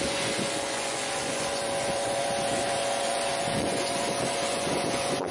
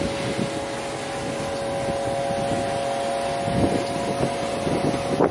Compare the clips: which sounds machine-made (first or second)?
first